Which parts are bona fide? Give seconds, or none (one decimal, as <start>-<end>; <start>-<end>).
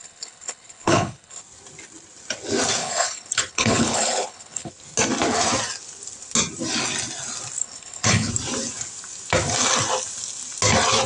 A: 1.4-2.8; 4.7-7.6; 8.3-11.1